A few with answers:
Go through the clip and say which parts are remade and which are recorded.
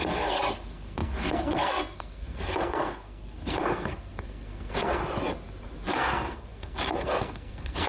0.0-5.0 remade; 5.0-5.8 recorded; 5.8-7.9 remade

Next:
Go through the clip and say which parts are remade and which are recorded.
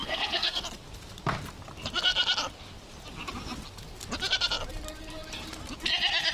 0.0-0.6 remade; 0.6-6.3 recorded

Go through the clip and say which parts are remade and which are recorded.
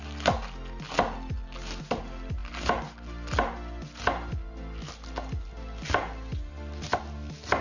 0.0-7.6 recorded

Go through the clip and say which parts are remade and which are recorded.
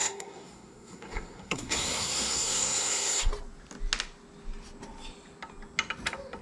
0.0-3.3 remade; 3.3-6.4 recorded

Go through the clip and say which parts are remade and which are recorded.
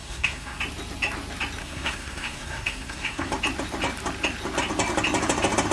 0.0-0.6 remade; 0.6-1.6 recorded; 1.6-3.3 remade; 3.3-5.7 recorded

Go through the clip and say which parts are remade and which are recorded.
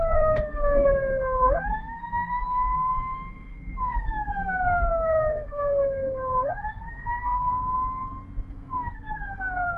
0.0-7.5 remade; 7.5-8.5 recorded; 8.5-9.8 remade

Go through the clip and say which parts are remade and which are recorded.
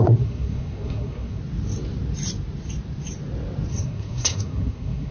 0.0-1.4 remade; 1.4-3.7 recorded; 3.7-5.1 remade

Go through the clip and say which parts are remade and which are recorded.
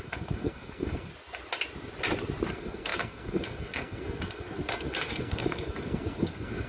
0.0-1.1 remade; 1.1-2.5 recorded; 2.5-6.7 remade